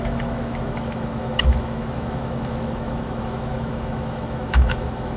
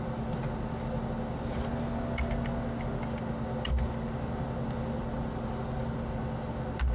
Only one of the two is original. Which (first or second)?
second